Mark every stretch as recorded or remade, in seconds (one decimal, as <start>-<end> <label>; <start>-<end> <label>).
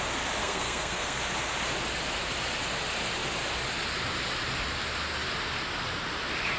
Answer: 0.0-0.4 recorded; 0.4-1.2 remade; 1.2-6.6 recorded